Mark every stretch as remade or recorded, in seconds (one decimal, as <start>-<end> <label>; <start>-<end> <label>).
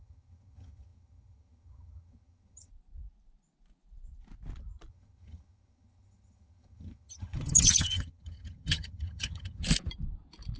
0.0-2.7 remade; 2.7-4.9 recorded; 4.9-9.6 remade; 9.6-10.6 recorded